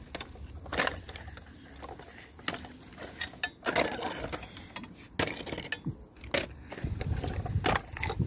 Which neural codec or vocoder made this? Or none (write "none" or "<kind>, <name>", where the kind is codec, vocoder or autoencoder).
none